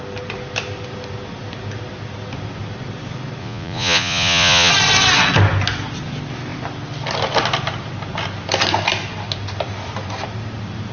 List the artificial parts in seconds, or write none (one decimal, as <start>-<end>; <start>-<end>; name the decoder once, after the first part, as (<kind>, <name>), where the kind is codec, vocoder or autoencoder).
3.4-4.7 (vocoder, Vocos)